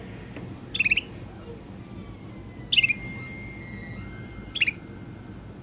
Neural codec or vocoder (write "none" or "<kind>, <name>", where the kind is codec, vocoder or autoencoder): none